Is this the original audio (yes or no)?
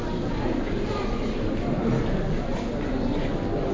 yes